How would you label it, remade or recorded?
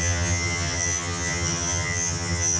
remade